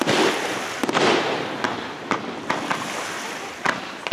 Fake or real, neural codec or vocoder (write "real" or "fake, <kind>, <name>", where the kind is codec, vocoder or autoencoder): real